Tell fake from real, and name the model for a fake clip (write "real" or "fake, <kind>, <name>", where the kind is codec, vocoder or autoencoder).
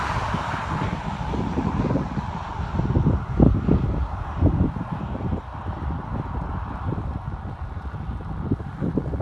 real